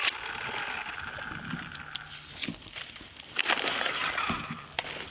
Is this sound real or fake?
real